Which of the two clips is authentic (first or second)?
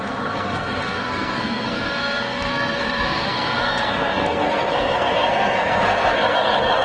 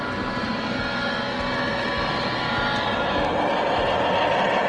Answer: second